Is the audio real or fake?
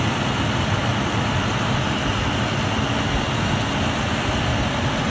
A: real